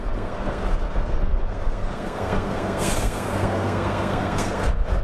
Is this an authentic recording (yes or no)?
no